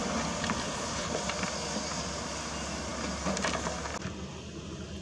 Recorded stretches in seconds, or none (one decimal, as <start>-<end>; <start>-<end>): 0.0-0.6; 1.1-5.0